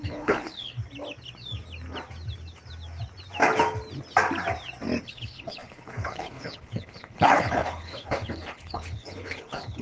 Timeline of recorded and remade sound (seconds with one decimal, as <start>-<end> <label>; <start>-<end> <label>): 0.0-0.8 remade; 0.8-5.0 recorded; 5.0-9.8 remade